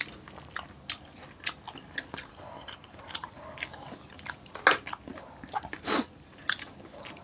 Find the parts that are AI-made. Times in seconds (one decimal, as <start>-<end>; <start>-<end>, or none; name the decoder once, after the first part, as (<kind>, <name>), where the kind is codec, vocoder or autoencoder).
2.3-3.0 (codec, DAC)